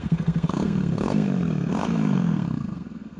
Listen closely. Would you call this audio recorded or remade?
remade